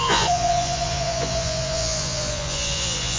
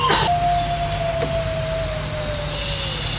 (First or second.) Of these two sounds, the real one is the second